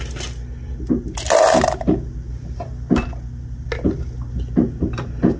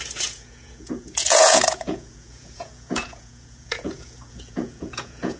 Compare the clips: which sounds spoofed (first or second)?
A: second